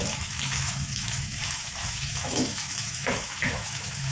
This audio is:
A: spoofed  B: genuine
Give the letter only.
A